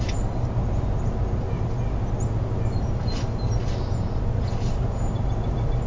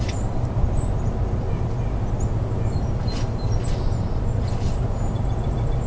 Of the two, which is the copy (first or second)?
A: second